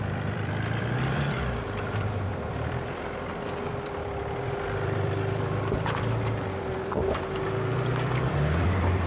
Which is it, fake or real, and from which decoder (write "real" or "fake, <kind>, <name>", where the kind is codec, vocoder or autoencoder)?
fake, vocoder, BigVGAN v2